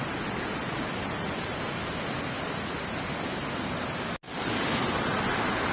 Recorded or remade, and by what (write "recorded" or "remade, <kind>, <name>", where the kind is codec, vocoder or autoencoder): recorded